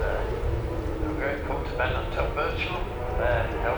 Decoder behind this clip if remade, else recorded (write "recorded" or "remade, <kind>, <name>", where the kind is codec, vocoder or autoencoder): recorded